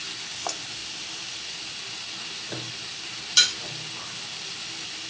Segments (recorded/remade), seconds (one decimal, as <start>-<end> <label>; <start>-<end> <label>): 0.0-0.8 recorded; 0.8-1.4 remade; 1.4-5.1 recorded